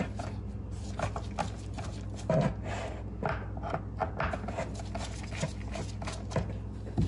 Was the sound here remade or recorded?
recorded